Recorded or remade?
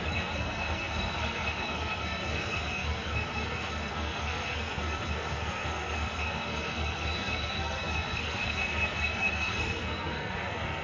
remade